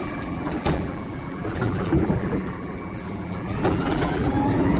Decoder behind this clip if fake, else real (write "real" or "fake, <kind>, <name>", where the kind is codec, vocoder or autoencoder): fake, vocoder, BigVGAN v2